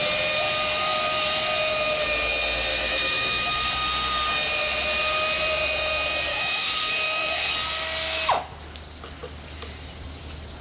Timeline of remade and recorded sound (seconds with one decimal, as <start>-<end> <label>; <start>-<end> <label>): 0.0-2.7 recorded; 2.7-3.7 remade; 3.7-6.3 recorded; 6.3-7.5 remade; 7.5-10.6 recorded